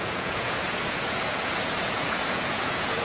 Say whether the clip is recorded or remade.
remade